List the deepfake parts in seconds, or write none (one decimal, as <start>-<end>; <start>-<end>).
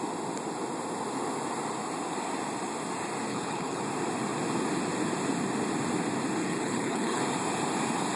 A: 3.3-3.8; 6.4-7.2